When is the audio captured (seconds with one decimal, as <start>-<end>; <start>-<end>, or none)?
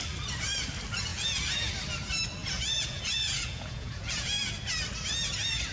0.0-1.1; 1.7-2.4; 4.5-5.7